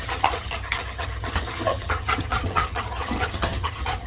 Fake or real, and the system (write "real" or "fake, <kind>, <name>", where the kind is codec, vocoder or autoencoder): fake, vocoder, HiFi-GAN